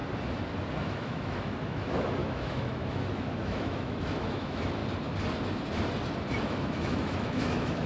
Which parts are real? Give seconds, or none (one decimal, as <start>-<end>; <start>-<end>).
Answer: 0.0-0.8; 4.8-6.4

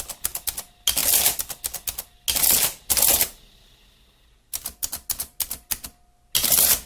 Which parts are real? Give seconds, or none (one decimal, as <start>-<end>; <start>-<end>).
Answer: 0.0-6.9

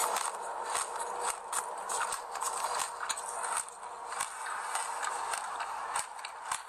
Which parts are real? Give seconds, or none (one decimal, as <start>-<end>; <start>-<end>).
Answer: 0.0-1.8; 2.8-6.7

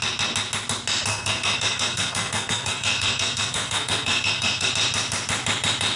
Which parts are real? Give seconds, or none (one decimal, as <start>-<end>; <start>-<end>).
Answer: 0.0-1.1; 4.7-6.0

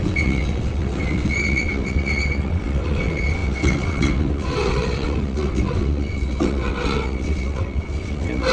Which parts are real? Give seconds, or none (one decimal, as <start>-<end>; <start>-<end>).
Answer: none